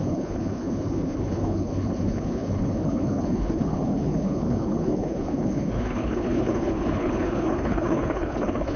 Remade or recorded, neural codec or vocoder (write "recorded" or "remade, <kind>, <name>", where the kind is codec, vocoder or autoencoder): remade, codec, HILCodec